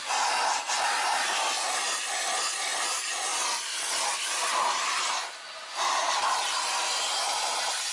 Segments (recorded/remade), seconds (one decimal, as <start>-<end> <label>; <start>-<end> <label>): 0.0-7.9 recorded